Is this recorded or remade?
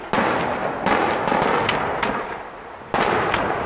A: recorded